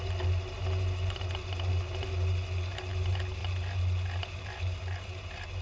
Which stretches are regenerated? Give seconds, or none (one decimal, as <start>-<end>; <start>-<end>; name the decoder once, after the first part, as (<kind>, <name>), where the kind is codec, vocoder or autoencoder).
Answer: none